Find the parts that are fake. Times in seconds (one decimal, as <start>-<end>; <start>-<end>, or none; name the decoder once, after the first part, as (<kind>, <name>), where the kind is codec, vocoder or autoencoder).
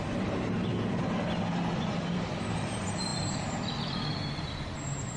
0.0-0.7 (vocoder, BigVGAN v2); 1.5-5.2